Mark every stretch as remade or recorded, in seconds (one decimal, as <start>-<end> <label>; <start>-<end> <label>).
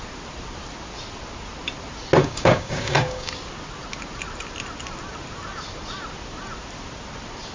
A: 0.0-2.2 recorded; 2.2-3.3 remade; 3.3-7.5 recorded